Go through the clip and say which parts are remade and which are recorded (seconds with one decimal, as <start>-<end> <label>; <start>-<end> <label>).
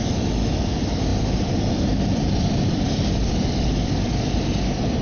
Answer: 0.0-1.1 recorded; 1.1-4.1 remade; 4.1-5.0 recorded